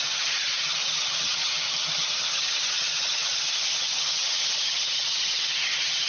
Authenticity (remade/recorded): remade